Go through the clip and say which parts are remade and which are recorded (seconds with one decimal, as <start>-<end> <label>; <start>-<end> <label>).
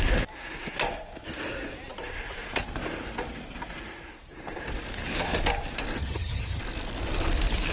0.0-6.0 recorded; 6.0-6.6 remade; 6.6-7.7 recorded